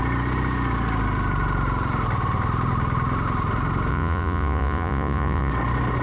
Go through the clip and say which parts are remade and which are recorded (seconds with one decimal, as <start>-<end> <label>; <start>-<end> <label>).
0.0-3.9 recorded; 3.9-5.5 remade; 5.5-6.0 recorded